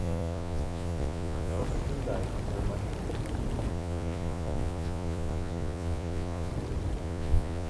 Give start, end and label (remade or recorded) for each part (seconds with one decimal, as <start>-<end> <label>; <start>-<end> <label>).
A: 0.0-1.6 remade; 1.6-3.7 recorded; 3.7-6.5 remade; 6.5-7.0 recorded; 7.0-7.7 remade